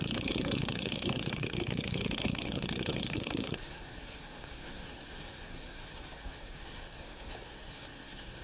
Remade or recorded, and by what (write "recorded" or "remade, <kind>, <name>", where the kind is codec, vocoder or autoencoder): remade, codec, SNAC